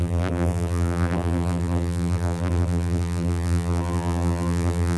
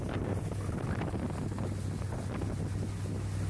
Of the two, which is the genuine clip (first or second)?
second